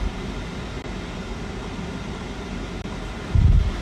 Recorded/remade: recorded